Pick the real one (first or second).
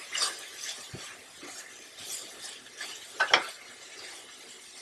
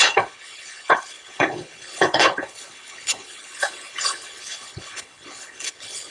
first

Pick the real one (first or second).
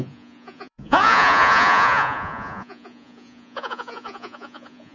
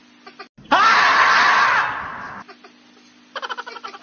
second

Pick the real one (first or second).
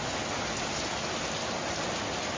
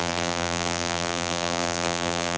first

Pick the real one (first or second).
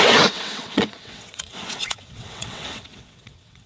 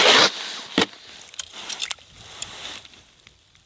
second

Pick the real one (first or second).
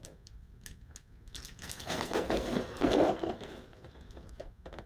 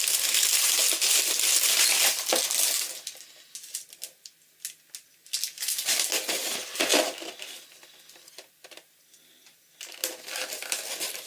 second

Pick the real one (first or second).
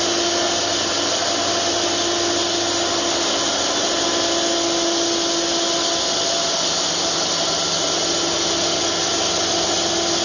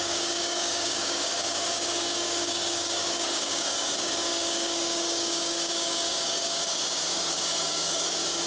first